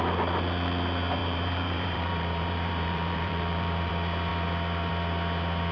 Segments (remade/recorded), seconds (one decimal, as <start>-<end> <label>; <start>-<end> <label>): 0.0-1.2 recorded; 1.2-3.9 remade; 3.9-5.7 recorded